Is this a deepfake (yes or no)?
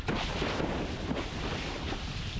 no